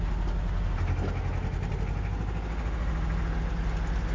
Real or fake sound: real